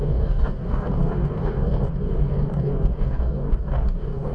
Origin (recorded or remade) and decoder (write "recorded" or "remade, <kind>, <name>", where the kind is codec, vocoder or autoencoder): remade, codec, DAC